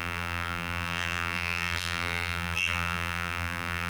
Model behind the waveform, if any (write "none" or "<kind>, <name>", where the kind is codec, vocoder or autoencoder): vocoder, BigVGAN v2